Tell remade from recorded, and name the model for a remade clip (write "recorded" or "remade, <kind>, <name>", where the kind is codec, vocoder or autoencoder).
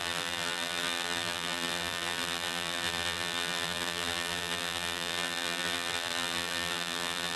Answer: remade, vocoder, BigVGAN v2